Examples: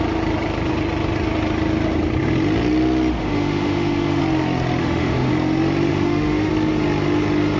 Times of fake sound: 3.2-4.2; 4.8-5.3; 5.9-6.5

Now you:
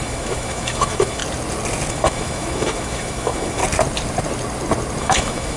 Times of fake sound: 0.0-1.2; 1.9-3.6; 5.0-5.6

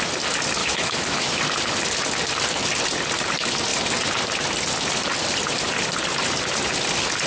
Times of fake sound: 0.6-1.4

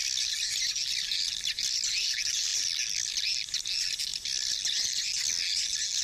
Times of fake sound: none

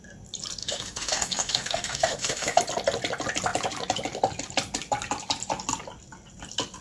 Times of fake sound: 0.6-2.6

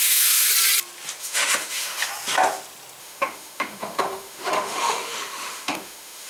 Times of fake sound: 0.0-0.5; 1.2-2.1; 3.0-6.3

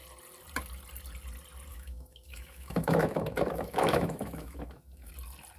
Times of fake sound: 1.7-5.1

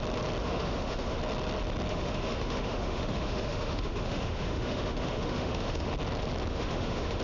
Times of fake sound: 0.4-1.2; 1.9-5.9; 6.5-7.2